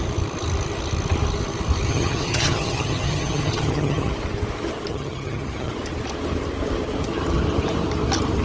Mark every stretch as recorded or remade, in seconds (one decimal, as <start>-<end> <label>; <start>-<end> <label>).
0.0-1.9 recorded; 1.9-4.1 remade; 4.1-4.9 recorded; 4.9-5.7 remade; 5.7-8.4 recorded